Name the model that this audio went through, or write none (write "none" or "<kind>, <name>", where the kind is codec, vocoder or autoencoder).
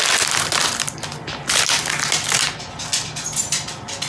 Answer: none